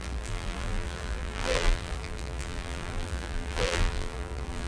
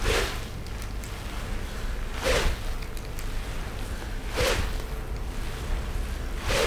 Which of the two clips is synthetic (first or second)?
first